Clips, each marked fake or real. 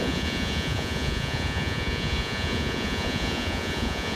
fake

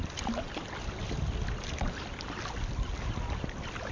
real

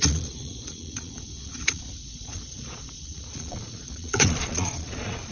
fake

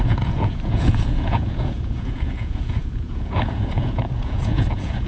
fake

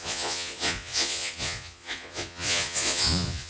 fake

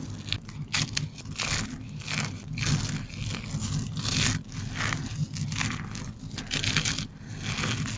real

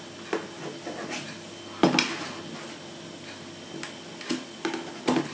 real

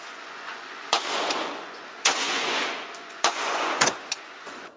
fake